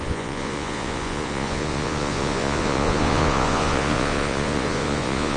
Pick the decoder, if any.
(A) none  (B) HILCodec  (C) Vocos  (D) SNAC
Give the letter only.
C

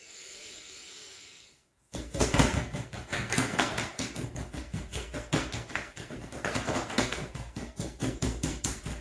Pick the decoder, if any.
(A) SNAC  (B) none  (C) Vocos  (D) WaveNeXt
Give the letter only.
A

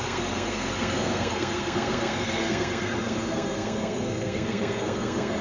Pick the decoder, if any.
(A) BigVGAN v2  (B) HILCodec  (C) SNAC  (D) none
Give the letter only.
C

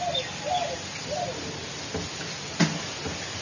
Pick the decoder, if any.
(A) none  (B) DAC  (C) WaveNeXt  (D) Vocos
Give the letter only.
A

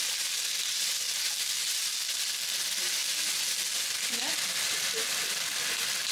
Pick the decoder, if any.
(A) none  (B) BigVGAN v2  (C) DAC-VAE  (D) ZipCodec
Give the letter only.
A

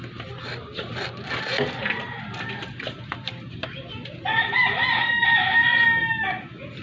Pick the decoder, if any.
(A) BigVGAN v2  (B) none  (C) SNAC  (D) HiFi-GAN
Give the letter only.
B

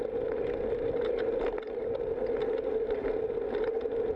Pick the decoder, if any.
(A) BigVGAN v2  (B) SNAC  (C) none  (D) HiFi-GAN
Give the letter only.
C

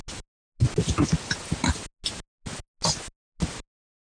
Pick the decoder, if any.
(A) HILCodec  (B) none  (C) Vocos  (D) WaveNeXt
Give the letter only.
B